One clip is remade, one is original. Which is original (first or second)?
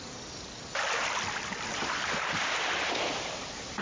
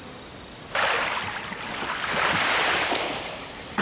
first